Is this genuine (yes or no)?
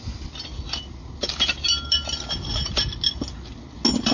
yes